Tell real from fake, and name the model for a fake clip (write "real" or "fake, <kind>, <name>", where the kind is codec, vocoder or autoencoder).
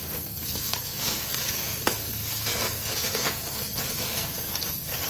fake, codec, SNAC